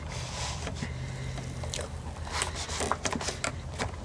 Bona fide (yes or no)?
yes